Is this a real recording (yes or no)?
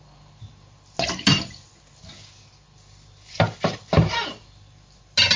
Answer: yes